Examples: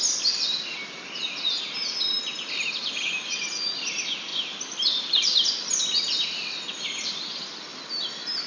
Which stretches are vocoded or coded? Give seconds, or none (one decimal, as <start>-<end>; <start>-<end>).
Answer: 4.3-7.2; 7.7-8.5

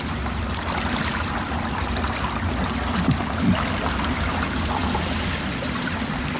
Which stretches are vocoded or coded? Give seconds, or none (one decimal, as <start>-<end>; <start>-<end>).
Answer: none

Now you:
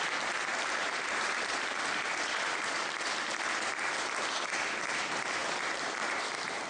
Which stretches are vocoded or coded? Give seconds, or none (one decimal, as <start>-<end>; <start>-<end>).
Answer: 0.5-2.8

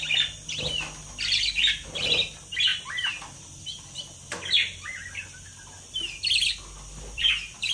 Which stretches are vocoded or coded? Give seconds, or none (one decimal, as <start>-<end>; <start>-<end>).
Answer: 2.7-7.3